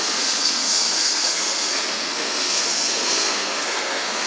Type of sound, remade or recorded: remade